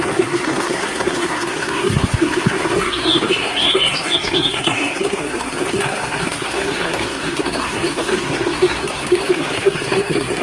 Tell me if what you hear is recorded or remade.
remade